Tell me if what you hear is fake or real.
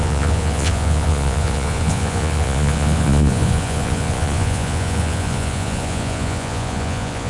fake